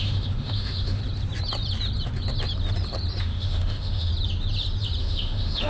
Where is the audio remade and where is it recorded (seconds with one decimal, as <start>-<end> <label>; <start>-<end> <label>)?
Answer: 0.0-1.0 remade; 1.0-3.2 recorded; 3.2-4.1 remade; 4.1-5.0 recorded; 5.0-5.7 remade